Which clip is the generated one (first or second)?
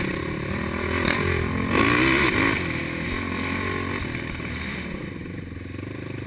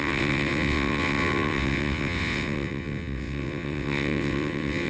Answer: second